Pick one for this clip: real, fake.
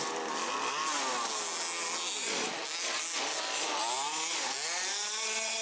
real